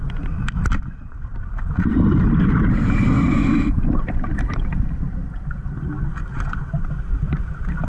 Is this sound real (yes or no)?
no